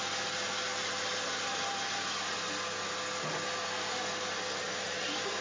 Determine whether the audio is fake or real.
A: real